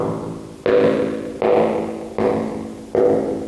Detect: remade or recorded recorded